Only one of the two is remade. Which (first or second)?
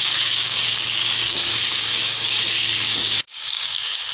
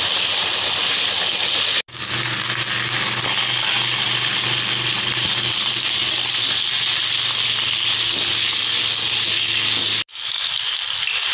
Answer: first